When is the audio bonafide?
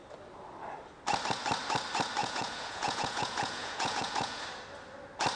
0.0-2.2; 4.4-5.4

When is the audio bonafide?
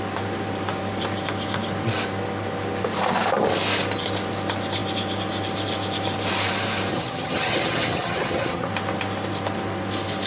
0.0-6.9; 8.7-10.3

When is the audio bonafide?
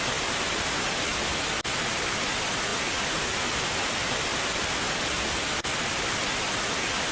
0.0-7.1